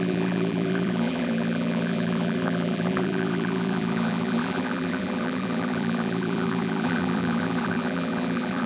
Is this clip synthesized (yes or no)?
yes